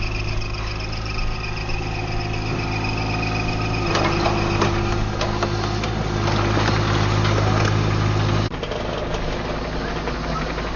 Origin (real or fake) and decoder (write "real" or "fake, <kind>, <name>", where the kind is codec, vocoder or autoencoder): real